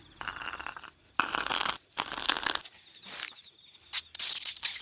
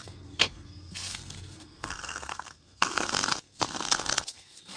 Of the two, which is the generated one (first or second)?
second